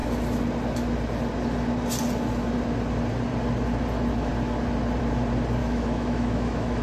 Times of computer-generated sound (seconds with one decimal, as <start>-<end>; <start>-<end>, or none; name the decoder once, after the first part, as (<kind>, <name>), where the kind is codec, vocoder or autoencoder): 5.6-6.8 (autoencoder, DAC-VAE)